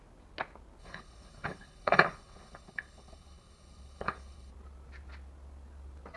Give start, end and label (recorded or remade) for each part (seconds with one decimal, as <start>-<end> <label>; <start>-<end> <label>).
0.0-0.8 recorded; 0.8-4.5 remade; 4.5-6.2 recorded